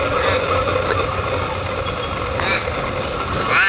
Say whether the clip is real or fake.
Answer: real